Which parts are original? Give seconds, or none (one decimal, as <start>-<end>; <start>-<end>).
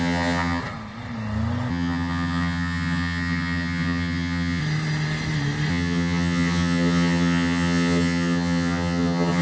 0.6-1.7; 4.6-5.7